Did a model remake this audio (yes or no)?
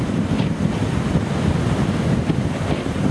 no